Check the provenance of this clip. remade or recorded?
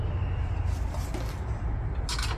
recorded